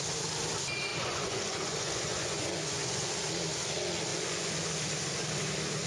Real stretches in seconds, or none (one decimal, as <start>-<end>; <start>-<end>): 0.0-0.9; 3.1-4.1; 4.7-5.9